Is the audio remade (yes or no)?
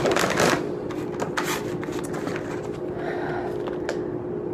no